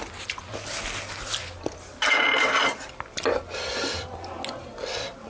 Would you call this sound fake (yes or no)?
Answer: no